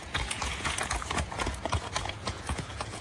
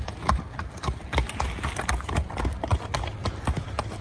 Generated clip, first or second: first